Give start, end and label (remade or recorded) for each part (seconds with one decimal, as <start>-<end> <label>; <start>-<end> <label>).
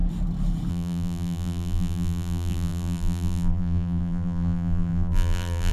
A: 0.0-0.7 recorded; 0.7-5.7 remade